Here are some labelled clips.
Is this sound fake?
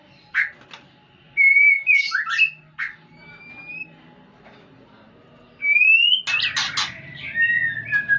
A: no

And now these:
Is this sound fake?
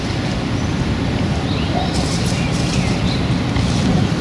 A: no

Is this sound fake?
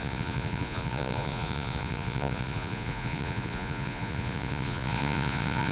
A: yes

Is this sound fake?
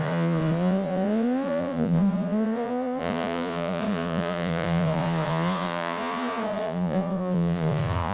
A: yes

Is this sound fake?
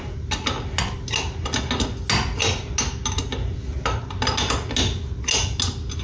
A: no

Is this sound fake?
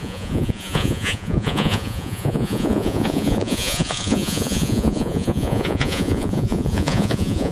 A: yes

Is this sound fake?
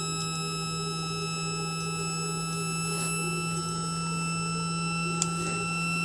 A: no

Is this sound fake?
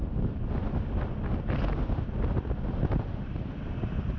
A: no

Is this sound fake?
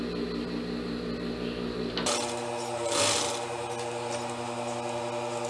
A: no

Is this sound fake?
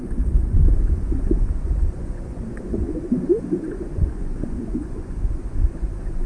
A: yes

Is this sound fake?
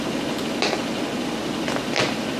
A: no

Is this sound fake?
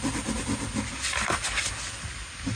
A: no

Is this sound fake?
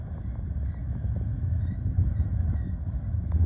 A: no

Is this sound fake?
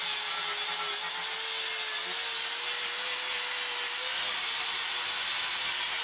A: no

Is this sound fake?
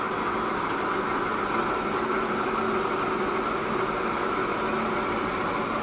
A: no